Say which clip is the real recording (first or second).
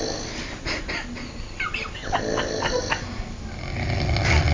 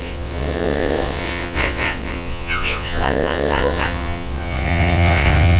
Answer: first